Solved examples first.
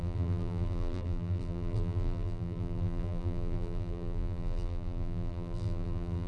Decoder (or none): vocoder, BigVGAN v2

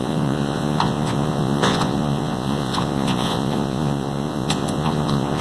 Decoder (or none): vocoder, Vocos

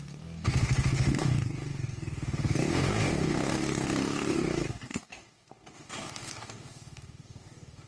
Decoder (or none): codec, DAC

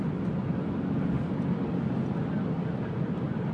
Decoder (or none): none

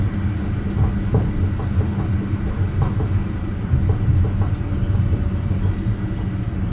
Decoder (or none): none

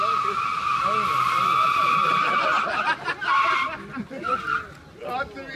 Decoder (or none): none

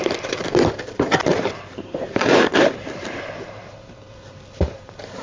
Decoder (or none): vocoder, BigVGAN v2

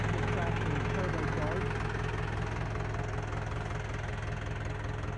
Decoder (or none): none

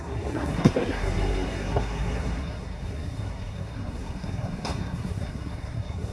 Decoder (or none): codec, SNAC